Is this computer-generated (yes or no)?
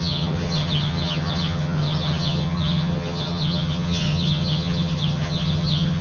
yes